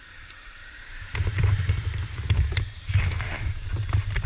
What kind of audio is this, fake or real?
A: fake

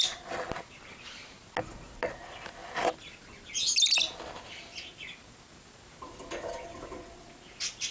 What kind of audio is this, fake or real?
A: real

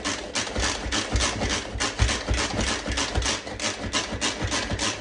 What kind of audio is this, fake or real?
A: real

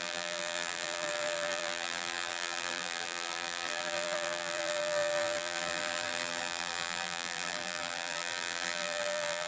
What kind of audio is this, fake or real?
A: fake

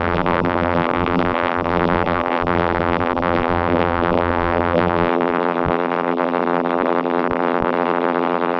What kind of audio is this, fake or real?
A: fake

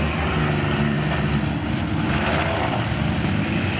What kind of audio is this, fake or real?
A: real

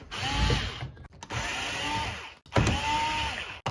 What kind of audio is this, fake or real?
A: real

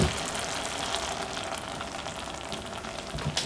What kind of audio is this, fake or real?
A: real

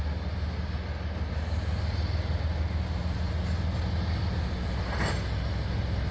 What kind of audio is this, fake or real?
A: real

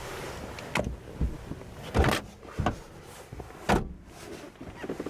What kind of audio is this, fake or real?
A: real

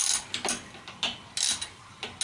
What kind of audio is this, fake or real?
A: real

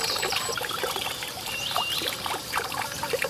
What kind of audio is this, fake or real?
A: fake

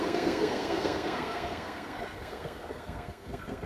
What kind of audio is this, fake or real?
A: fake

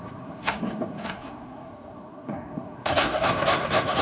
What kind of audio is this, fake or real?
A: fake